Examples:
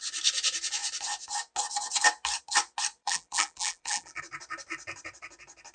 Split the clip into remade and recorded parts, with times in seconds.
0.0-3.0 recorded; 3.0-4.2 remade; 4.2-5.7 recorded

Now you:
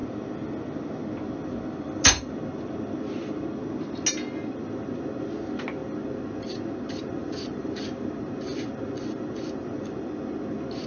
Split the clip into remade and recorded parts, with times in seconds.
0.0-7.2 recorded; 7.2-7.8 remade; 7.8-10.9 recorded

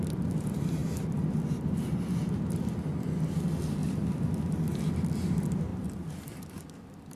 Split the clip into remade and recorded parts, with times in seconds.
0.0-0.8 recorded; 0.8-1.4 remade; 1.4-3.8 recorded; 3.8-4.8 remade; 4.8-5.7 recorded; 5.7-7.2 remade